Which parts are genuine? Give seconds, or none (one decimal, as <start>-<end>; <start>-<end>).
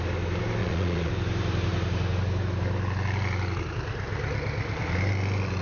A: 0.0-0.6; 1.1-5.6